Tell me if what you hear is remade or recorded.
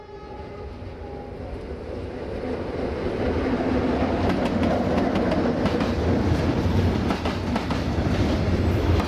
recorded